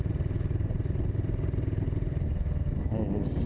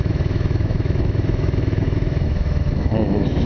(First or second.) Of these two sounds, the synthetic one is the second